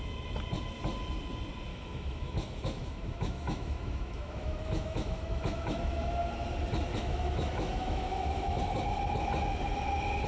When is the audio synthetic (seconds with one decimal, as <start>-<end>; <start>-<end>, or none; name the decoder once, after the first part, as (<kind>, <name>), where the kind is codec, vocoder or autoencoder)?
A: 1.7-6.3 (autoencoder, DAC-VAE); 7.0-8.6